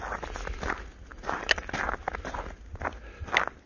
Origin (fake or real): real